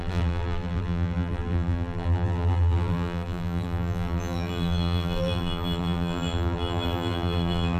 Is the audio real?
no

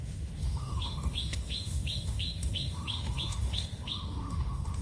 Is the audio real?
no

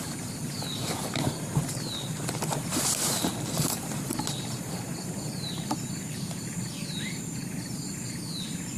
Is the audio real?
no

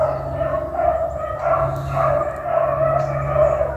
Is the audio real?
yes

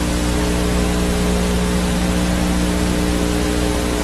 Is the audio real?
yes